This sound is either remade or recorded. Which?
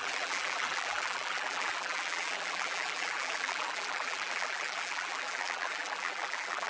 remade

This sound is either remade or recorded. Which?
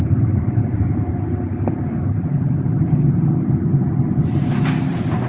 remade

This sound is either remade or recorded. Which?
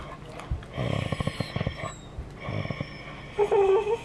recorded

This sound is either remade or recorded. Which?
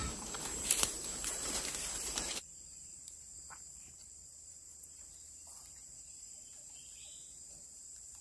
remade